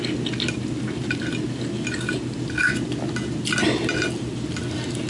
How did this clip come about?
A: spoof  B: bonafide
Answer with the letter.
B